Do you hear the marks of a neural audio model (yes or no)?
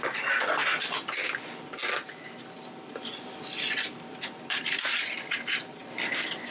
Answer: no